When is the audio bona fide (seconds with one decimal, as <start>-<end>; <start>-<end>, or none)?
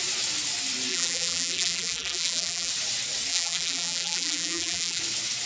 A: 0.0-0.9; 2.7-3.3; 5.0-5.5